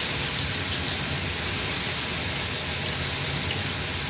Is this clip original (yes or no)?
yes